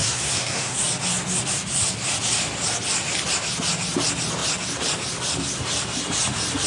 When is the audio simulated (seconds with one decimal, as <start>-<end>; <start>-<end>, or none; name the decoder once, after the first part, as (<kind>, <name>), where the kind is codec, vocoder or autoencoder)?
0.0-0.8 (codec, SNAC)

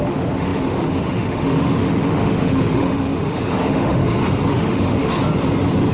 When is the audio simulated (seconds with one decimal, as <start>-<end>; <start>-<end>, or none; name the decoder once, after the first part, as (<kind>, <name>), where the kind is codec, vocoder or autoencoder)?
0.0-4.0 (autoencoder, DAC-VAE); 4.5-5.2

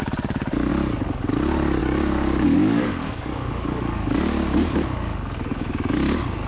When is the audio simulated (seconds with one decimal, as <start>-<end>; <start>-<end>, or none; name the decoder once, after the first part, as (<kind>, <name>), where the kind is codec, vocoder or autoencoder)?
0.0-0.7 (codec, DAC); 1.8-5.7

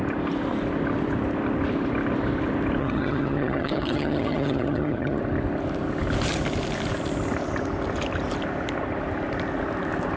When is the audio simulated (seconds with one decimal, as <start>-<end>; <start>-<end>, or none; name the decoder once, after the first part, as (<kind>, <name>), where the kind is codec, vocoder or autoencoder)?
2.8-5.2 (vocoder, HiFi-GAN)